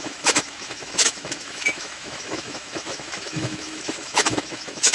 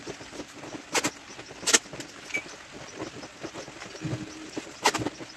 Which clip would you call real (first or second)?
second